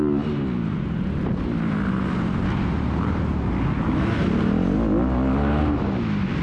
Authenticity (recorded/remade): recorded